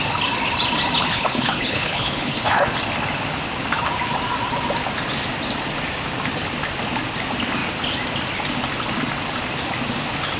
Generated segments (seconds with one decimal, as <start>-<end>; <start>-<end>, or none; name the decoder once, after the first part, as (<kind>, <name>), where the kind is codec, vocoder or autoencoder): 1.0-2.7 (codec, HILCodec)